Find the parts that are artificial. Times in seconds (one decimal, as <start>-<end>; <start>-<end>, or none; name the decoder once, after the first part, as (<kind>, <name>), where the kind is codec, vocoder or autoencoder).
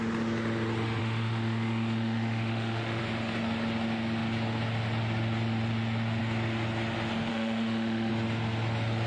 1.0-3.0 (autoencoder, DAC-VAE); 7.3-8.1